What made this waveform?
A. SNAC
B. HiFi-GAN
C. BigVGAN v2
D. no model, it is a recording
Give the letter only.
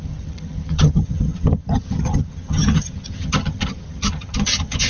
B